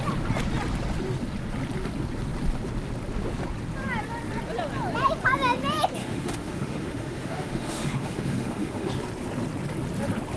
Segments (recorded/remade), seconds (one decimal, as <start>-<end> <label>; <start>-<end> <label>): 0.0-6.0 recorded; 6.0-8.9 remade; 8.9-10.4 recorded